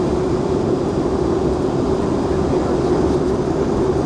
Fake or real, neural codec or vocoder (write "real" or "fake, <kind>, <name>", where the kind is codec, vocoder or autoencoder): fake, vocoder, BigVGAN v2